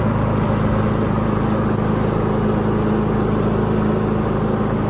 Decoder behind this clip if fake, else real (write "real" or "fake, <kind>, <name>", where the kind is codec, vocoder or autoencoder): real